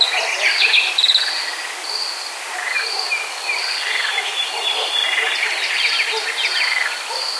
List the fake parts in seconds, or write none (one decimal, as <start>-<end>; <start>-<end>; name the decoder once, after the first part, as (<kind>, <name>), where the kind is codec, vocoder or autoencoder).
2.5-3.3 (vocoder, BigVGAN v2)